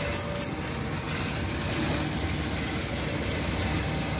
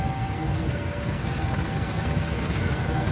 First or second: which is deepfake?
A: second